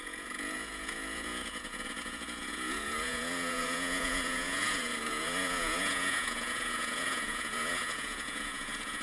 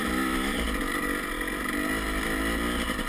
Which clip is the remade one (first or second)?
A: first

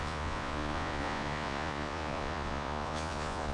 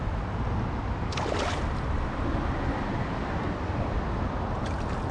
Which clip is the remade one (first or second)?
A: first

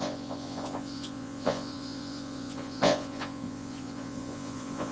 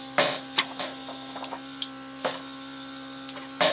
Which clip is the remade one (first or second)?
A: first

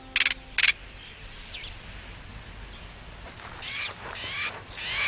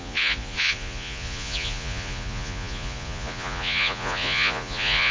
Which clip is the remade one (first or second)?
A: second